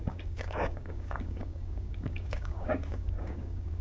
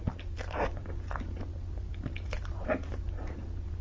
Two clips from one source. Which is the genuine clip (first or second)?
second